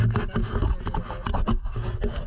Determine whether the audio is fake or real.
real